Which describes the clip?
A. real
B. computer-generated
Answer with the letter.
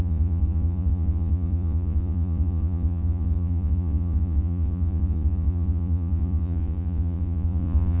B